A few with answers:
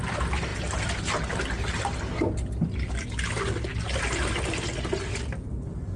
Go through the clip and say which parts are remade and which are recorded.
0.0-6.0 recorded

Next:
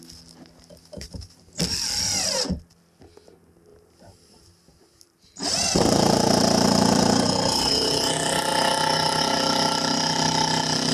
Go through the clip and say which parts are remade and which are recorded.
0.0-3.7 recorded; 3.7-7.9 remade; 7.9-10.9 recorded